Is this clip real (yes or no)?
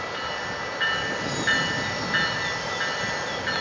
yes